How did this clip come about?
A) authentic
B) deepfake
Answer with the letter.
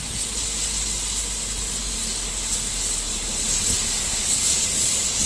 A